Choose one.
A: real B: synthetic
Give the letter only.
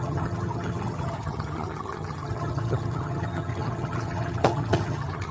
B